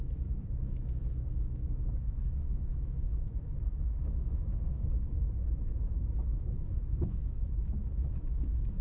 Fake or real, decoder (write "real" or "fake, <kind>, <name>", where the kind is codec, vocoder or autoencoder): fake, autoencoder, DAC-VAE